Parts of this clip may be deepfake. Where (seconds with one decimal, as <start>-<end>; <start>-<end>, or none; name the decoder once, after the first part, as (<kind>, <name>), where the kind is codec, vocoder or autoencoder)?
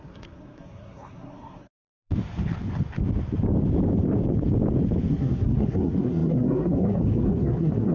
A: 0.0-1.9 (codec, SNAC); 5.1-7.9